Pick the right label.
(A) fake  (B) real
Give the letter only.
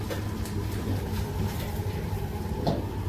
A